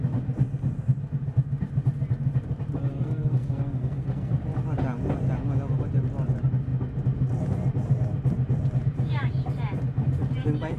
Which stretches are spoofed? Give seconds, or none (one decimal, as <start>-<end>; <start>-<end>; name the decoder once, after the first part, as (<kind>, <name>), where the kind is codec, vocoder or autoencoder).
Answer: 2.9-4.3 (codec, SNAC)